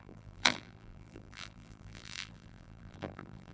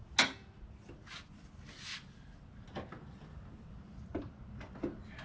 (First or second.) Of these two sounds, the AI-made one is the first